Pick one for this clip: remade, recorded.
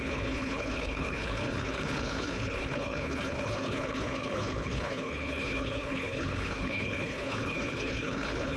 remade